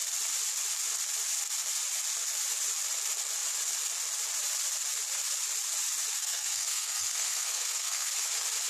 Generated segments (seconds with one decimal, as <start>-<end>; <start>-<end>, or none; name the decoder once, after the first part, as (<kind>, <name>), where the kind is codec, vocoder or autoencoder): 6.2-8.1 (codec, SNAC)